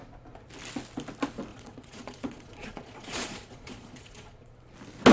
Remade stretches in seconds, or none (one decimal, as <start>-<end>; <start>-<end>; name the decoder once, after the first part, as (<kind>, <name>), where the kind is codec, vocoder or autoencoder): 1.5-4.6 (vocoder, Vocos)

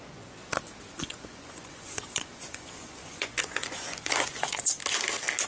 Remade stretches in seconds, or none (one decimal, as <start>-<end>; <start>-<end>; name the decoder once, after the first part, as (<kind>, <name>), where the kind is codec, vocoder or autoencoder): 0.0-0.4 (vocoder, Vocos); 0.9-4.7

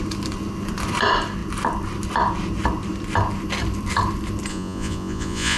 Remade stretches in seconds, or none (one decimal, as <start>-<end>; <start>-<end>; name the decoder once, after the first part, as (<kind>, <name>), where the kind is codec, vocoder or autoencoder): 4.5-5.6 (vocoder, Vocos)

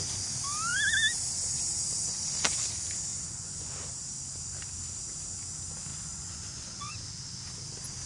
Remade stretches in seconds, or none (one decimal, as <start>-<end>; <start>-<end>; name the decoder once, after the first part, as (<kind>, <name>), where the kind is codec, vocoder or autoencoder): 3.1-3.7 (vocoder, Vocos); 5.9-6.9

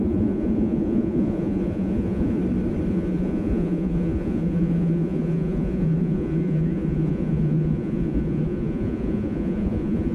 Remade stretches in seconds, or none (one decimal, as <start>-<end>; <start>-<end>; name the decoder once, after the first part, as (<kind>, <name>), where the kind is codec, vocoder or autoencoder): 0.0-2.4 (vocoder, Vocos); 2.9-10.1

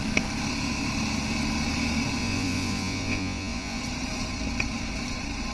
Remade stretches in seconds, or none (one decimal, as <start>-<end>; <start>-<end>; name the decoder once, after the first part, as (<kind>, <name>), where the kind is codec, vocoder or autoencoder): 2.2-3.8 (vocoder, Vocos)

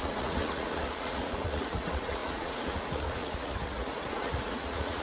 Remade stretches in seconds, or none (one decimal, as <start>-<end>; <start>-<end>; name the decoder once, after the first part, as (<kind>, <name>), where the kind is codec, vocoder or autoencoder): 0.0-5.0 (vocoder, Vocos)

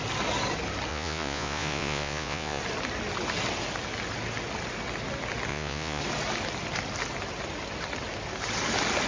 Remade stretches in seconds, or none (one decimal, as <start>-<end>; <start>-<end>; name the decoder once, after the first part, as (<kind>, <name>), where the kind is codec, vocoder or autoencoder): 0.9-2.6 (vocoder, Vocos); 5.5-6.0